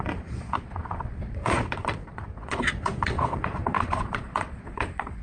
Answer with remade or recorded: remade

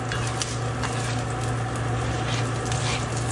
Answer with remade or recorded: recorded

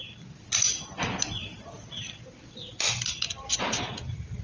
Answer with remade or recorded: recorded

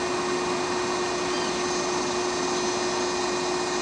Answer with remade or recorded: recorded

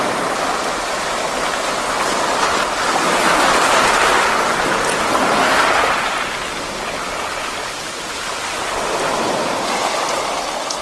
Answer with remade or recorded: recorded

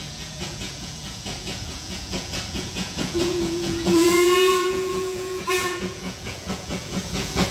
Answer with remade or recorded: remade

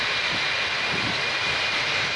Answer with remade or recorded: recorded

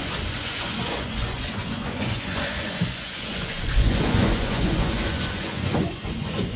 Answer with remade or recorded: remade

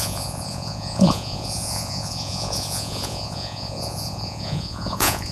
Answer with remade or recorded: remade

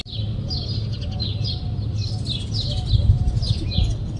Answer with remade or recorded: recorded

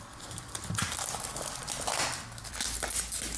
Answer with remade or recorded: recorded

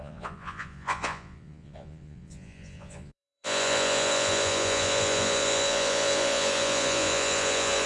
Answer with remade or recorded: remade